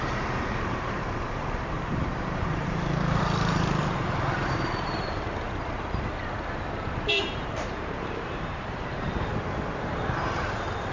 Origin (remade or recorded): remade